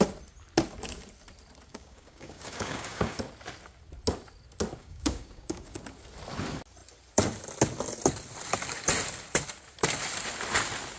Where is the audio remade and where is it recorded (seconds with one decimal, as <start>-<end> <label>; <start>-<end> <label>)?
0.0-1.7 recorded; 1.7-3.2 remade; 3.2-4.8 recorded; 4.8-5.8 remade; 5.8-11.0 recorded